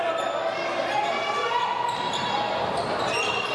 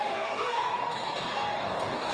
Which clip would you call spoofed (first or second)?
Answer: second